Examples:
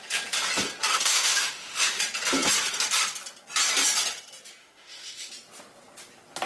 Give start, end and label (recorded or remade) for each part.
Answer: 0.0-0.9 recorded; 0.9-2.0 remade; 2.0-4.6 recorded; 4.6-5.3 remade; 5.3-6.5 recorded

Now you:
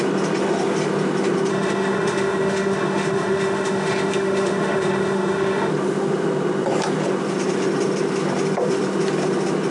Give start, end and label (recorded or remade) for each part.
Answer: 0.0-1.5 recorded; 1.5-5.7 remade; 5.7-9.7 recorded

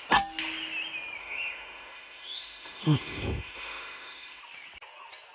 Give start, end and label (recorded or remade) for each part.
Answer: 0.0-1.2 recorded; 1.2-4.4 remade; 4.4-5.3 recorded

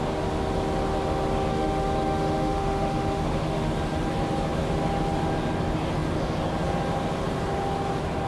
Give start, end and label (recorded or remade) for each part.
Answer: 0.0-1.5 recorded; 1.5-3.7 remade; 3.7-8.3 recorded

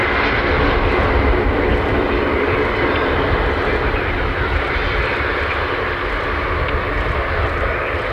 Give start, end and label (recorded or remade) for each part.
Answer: 0.0-8.1 recorded

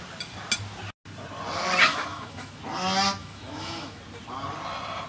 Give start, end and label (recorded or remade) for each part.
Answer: 0.0-1.9 recorded; 1.9-2.6 remade; 2.6-3.2 recorded; 3.2-4.0 remade; 4.0-5.1 recorded